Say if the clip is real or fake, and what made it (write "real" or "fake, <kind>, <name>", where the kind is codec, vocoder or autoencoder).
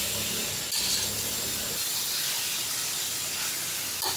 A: real